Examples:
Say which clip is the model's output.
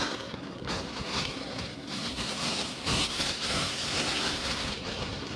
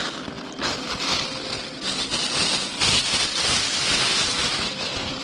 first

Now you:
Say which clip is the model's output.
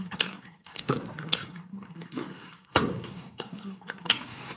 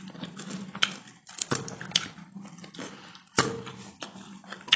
first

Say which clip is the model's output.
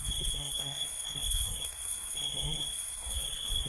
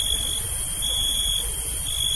first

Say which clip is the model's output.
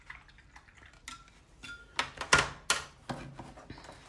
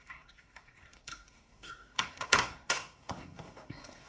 second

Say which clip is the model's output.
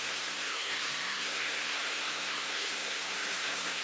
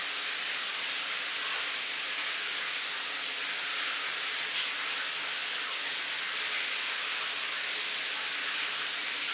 first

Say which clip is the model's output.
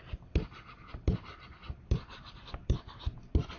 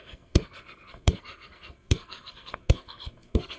second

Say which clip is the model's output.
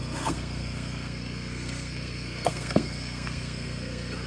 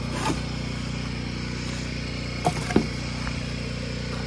first